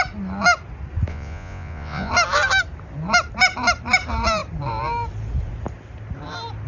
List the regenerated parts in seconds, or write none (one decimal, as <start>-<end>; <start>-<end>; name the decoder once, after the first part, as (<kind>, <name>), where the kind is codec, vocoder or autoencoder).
1.1-2.1 (vocoder, Vocos)